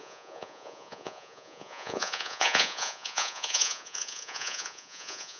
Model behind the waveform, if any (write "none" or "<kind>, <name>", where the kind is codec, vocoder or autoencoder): vocoder, Vocos